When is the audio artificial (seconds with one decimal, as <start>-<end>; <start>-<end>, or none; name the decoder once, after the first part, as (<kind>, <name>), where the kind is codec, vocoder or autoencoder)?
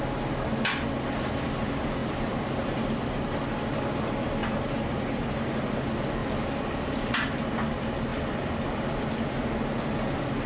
2.0-2.7 (vocoder, BigVGAN v2); 4.4-5.3; 6.2-7.4; 8.1-9.0